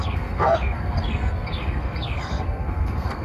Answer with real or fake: fake